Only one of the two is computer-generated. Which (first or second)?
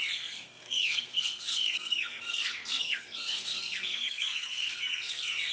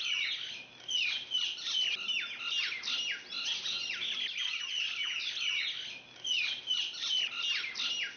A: first